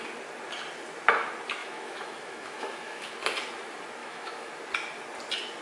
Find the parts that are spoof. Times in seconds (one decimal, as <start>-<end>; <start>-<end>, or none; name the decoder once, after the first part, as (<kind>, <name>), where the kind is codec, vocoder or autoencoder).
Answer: 1.6-3.1 (autoencoder, DAC-VAE); 4.0-4.5